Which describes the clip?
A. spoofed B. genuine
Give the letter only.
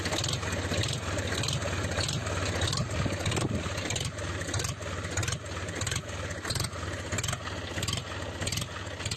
B